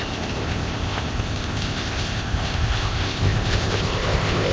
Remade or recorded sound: remade